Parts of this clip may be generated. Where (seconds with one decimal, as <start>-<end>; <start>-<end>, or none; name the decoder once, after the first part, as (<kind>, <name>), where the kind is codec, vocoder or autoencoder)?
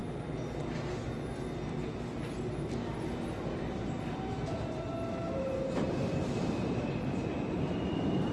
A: none